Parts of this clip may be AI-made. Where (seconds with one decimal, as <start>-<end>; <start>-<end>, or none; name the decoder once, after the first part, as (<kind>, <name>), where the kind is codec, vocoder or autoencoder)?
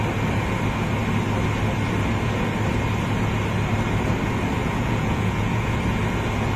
4.6-5.8 (vocoder, Vocos)